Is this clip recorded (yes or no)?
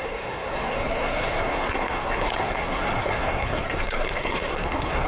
no